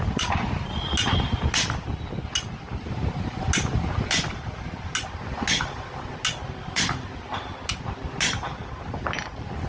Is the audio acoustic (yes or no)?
yes